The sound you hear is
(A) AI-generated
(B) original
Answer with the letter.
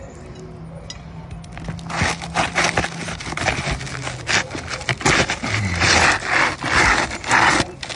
B